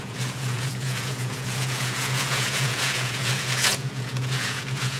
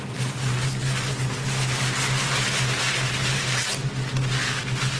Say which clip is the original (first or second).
second